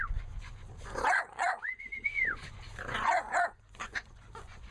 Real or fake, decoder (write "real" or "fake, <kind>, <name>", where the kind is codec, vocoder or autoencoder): fake, vocoder, Vocos